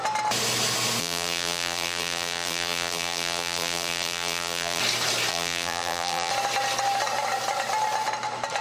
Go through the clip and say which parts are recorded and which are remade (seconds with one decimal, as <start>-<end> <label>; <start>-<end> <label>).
0.0-1.0 recorded; 1.0-4.8 remade; 4.8-5.3 recorded; 5.3-6.3 remade; 6.3-8.6 recorded